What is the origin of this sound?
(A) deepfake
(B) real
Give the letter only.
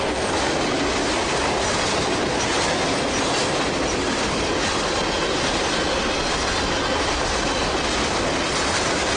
B